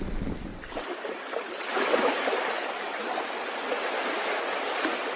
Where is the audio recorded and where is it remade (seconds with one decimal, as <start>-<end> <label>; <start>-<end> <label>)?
0.0-0.5 recorded; 0.5-3.6 remade; 3.6-5.2 recorded